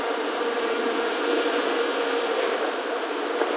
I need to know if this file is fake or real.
real